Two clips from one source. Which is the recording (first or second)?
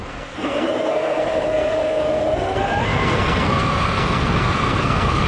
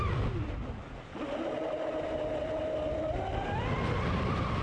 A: second